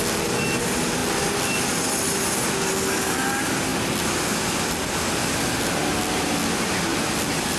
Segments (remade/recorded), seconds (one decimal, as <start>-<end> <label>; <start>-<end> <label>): 0.0-6.9 recorded; 6.9-7.6 remade